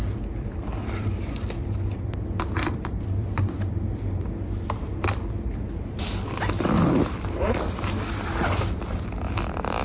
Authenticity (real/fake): fake